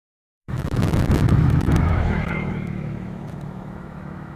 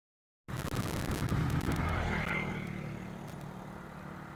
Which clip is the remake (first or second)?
first